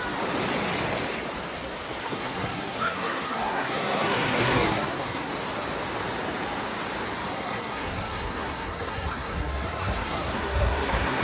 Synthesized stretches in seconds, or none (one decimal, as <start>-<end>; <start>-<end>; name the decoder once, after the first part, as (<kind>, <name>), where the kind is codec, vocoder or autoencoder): 2.0-5.3 (codec, SNAC); 7.3-11.2